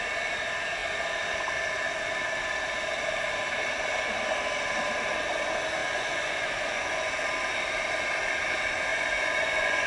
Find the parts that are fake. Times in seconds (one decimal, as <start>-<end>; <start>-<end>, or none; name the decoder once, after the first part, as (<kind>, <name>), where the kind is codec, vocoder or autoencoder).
5.8-7.1 (vocoder, Vocos); 8.9-9.9